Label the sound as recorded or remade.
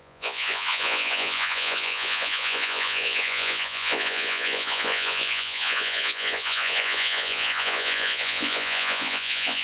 remade